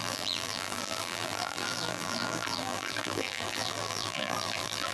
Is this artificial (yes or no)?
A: yes